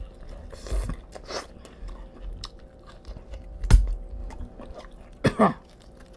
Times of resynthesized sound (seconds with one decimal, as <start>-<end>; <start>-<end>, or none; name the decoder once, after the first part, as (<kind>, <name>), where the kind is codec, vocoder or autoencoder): 4.2-4.8 (vocoder, BigVGAN v2)